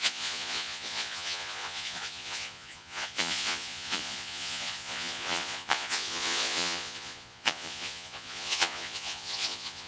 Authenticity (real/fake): fake